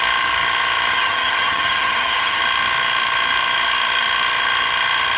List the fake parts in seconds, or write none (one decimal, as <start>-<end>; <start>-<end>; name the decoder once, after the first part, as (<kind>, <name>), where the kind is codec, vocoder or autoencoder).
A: 0.9-2.4 (vocoder, HiFi-GAN)